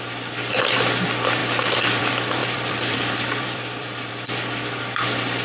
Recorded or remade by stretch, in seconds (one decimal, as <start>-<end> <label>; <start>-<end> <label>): 0.0-2.4 recorded; 2.4-4.1 remade; 4.1-5.4 recorded